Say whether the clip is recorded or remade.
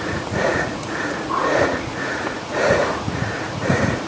remade